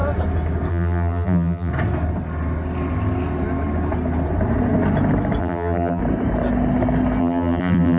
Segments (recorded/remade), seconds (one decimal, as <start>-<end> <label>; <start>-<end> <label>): 0.0-0.7 recorded; 0.7-1.7 remade; 1.7-5.4 recorded; 5.4-6.0 remade; 6.0-7.2 recorded; 7.2-8.0 remade